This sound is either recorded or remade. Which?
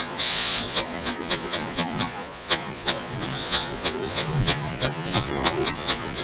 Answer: remade